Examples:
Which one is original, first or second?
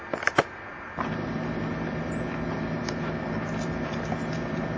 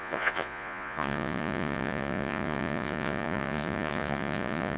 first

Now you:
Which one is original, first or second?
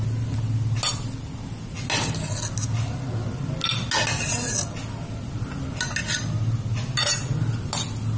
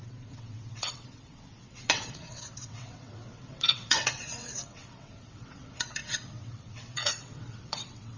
first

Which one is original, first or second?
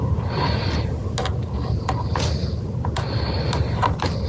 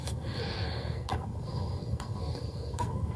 first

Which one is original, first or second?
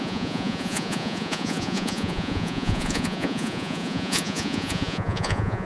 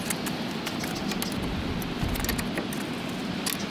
second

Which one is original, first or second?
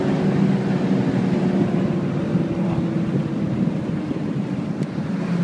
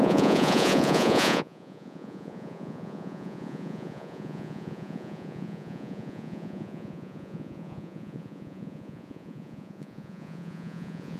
first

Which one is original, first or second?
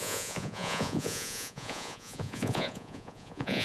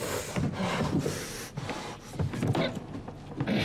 second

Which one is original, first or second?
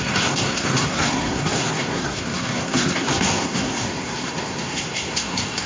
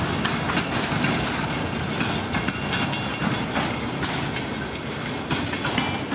second